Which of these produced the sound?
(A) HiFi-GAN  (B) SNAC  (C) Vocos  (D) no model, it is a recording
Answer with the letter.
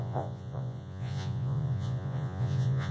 C